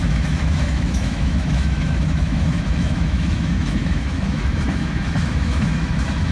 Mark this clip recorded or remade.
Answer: remade